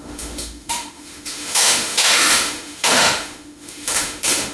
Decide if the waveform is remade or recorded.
remade